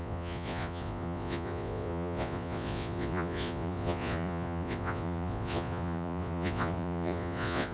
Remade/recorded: remade